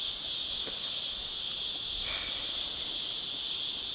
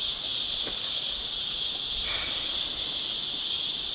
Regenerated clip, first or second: second